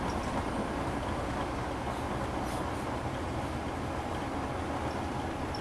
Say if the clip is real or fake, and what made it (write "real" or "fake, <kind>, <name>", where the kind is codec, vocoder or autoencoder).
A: real